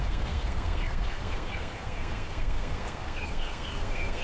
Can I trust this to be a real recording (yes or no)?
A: no